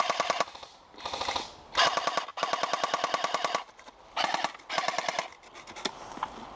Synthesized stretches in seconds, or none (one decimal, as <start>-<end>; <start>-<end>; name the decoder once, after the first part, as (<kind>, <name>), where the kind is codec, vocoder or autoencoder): none

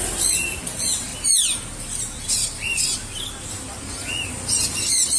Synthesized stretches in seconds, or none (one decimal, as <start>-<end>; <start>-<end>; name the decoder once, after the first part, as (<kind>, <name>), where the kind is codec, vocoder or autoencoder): none